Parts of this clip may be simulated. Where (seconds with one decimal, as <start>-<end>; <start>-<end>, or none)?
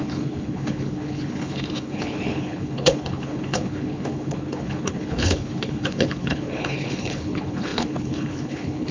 0.0-8.9